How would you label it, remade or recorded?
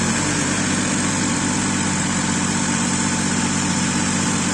remade